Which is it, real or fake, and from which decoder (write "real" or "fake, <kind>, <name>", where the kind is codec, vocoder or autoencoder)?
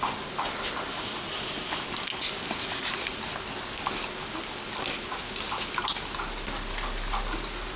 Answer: real